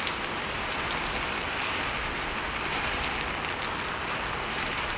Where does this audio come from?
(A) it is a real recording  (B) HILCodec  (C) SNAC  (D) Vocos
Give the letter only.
A